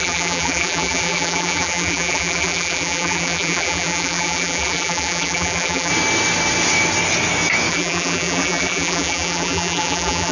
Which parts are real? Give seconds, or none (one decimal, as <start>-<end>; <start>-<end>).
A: 5.9-7.7